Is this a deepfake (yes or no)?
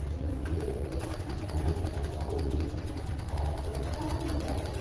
yes